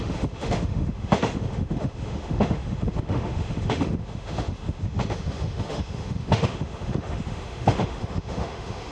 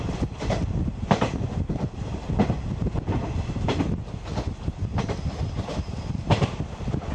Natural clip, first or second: second